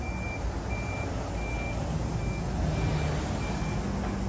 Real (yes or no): yes